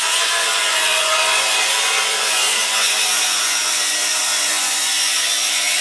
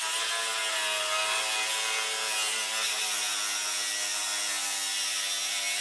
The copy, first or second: first